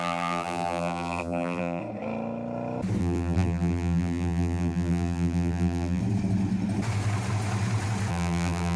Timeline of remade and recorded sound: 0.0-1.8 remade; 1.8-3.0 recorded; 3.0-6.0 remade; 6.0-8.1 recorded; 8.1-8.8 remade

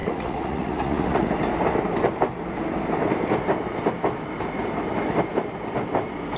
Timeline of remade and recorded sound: 0.0-1.3 remade; 1.3-6.4 recorded

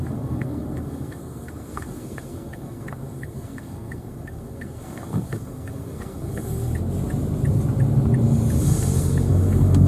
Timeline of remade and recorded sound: 0.0-6.7 remade; 6.7-8.6 recorded; 8.6-9.9 remade

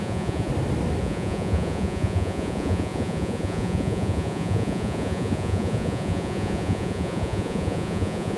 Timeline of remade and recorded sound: 0.0-0.5 remade; 0.5-1.0 recorded; 1.0-8.4 remade

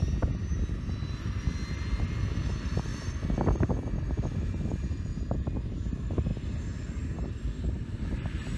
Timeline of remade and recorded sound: 0.0-8.6 recorded

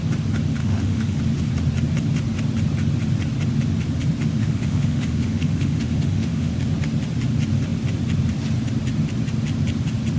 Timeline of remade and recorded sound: 0.0-0.6 recorded; 0.6-1.2 remade; 1.2-4.4 recorded; 4.4-6.5 remade; 6.5-10.2 recorded

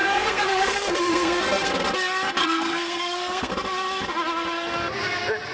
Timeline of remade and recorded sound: 0.0-1.7 remade; 1.7-2.4 recorded; 2.4-3.5 remade; 3.5-5.5 recorded

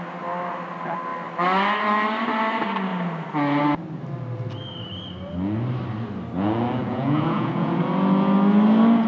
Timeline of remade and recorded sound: 0.0-6.8 recorded; 6.8-7.8 remade; 7.8-9.1 recorded